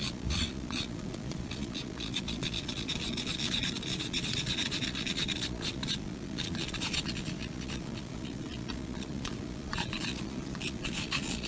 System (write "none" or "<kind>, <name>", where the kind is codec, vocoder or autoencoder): vocoder, Vocos